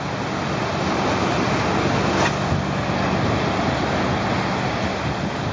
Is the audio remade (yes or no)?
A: no